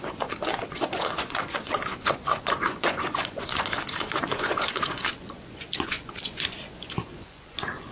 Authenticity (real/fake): fake